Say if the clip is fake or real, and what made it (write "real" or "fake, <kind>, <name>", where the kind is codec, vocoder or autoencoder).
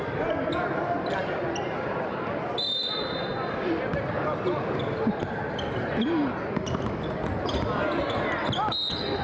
real